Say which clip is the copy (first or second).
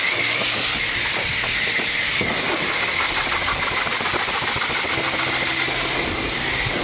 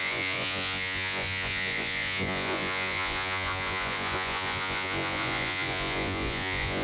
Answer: second